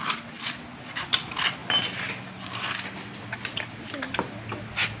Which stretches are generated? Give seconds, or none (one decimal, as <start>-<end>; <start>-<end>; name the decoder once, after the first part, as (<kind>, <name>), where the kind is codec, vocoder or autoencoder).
none